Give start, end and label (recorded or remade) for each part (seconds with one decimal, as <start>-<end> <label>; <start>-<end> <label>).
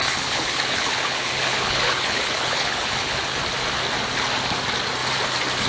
0.0-3.4 remade; 3.4-5.7 recorded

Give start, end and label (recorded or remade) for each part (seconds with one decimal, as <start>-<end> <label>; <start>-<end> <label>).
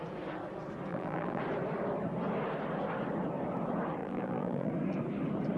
0.0-0.9 recorded; 0.9-1.4 remade; 1.4-4.0 recorded; 4.0-4.7 remade; 4.7-5.6 recorded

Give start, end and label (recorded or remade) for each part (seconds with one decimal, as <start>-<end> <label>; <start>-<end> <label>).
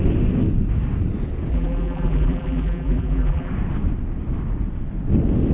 0.0-1.5 recorded; 1.5-3.5 remade; 3.5-5.5 recorded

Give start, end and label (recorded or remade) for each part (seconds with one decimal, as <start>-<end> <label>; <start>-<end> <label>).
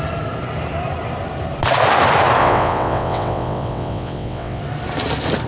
0.0-2.4 recorded; 2.4-4.6 remade; 4.6-5.5 recorded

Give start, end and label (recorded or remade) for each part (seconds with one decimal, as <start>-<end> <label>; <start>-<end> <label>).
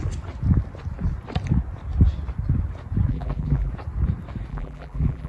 0.0-3.1 recorded; 3.1-3.7 remade; 3.7-4.5 recorded; 4.5-5.3 remade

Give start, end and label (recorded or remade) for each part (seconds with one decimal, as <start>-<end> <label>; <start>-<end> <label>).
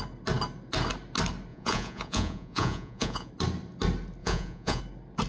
0.0-1.5 recorded; 1.5-3.3 remade; 3.3-4.2 recorded; 4.2-4.8 remade; 4.8-5.3 recorded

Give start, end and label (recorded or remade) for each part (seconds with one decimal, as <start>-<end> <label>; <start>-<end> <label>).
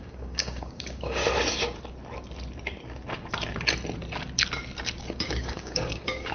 0.0-1.2 remade; 1.2-5.0 recorded; 5.0-6.3 remade